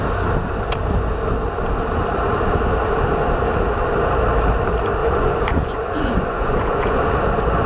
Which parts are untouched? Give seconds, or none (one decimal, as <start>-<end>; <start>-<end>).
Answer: 0.0-5.0; 7.1-7.7